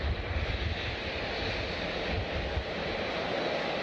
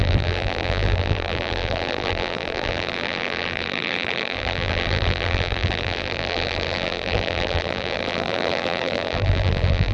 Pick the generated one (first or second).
second